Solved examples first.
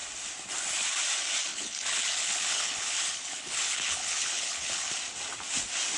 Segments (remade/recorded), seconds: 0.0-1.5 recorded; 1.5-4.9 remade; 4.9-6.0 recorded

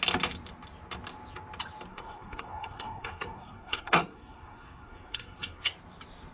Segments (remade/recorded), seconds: 0.0-1.9 recorded; 1.9-5.7 remade; 5.7-6.3 recorded